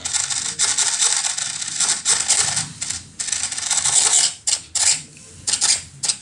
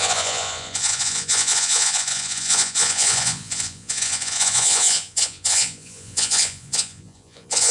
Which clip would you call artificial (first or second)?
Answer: second